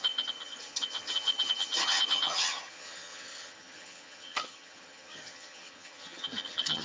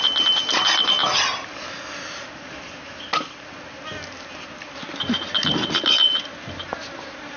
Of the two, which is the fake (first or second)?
first